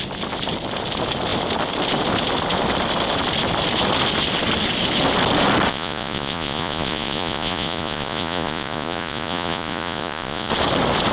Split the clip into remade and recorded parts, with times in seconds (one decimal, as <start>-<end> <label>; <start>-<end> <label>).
0.0-5.7 recorded; 5.7-10.5 remade; 10.5-11.1 recorded